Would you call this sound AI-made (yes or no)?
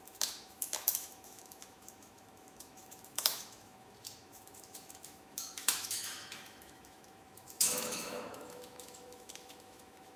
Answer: yes